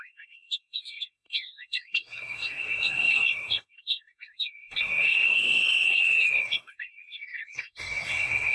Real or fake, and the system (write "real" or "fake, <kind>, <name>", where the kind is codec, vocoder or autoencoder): fake, codec, SNAC